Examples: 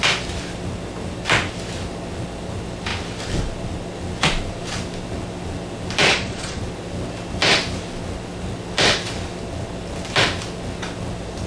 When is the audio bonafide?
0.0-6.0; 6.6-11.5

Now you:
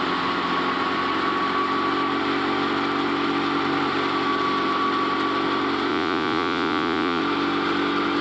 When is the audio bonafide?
0.0-5.9; 7.2-8.2

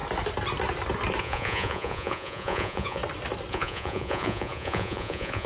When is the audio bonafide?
0.0-1.2; 3.0-3.5

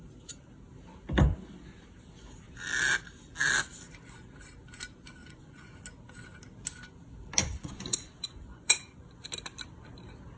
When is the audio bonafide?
0.0-5.2; 5.8-7.4; 9.0-10.4

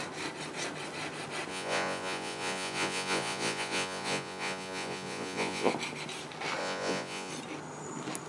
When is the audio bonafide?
0.0-1.5; 5.7-6.6; 7.3-8.3

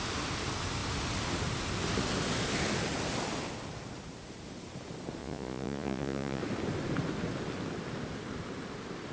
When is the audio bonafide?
0.0-5.2; 6.4-9.1

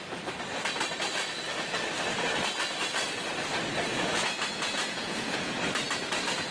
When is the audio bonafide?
0.0-3.9; 5.6-6.5